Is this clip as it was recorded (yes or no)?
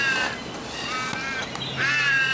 yes